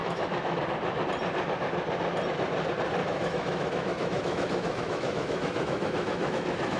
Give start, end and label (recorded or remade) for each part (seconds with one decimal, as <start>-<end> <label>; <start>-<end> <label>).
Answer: 0.0-0.6 remade; 0.6-3.0 recorded; 3.0-6.8 remade